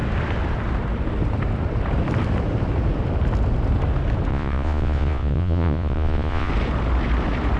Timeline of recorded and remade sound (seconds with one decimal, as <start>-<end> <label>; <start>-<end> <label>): 0.0-4.3 recorded; 4.3-6.5 remade; 6.5-7.6 recorded